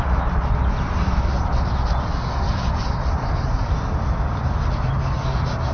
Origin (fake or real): real